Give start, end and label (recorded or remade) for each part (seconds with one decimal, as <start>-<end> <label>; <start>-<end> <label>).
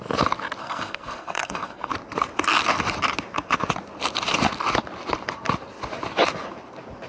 0.0-0.6 recorded; 0.6-1.9 remade; 1.9-7.1 recorded